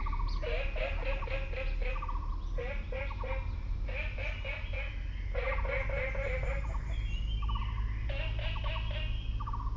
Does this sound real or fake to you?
real